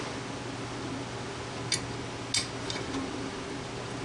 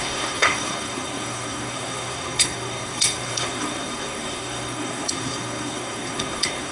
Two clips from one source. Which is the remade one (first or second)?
second